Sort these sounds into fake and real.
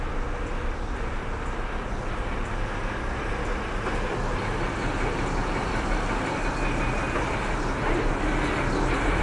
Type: real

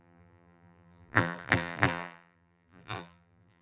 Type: fake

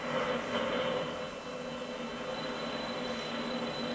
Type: real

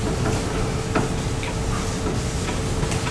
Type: real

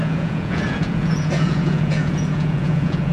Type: fake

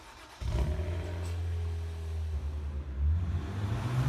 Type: real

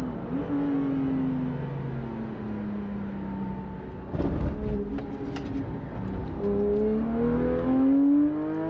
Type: real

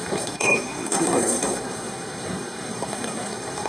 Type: fake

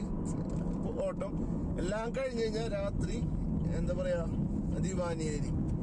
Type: real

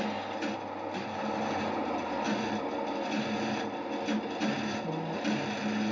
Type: real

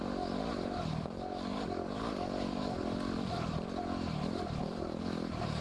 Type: real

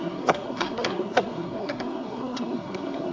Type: fake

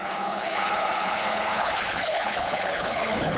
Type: fake